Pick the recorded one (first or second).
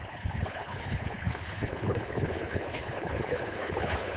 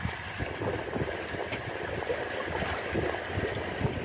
second